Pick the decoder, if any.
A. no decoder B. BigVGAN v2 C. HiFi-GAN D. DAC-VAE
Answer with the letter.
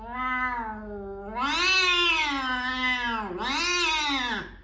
A